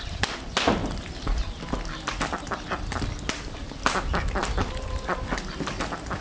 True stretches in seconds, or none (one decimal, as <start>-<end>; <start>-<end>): 4.4-6.2

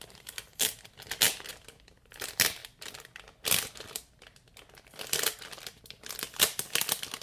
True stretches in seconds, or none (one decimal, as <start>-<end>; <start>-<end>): 0.0-7.2

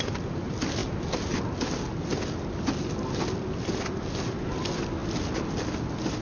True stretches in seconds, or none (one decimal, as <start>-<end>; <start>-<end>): 0.0-6.2

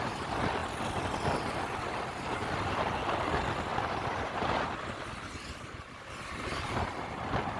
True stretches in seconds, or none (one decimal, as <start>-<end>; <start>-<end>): 0.0-3.7; 4.6-7.6